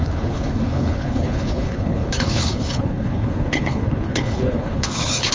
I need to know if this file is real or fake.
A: fake